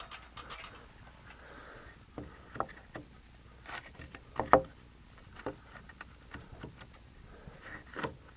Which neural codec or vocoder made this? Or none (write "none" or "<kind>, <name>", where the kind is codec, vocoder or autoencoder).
none